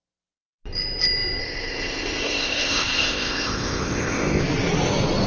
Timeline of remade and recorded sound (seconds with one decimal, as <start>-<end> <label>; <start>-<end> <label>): 0.0-1.4 recorded; 1.4-4.4 remade; 4.4-5.3 recorded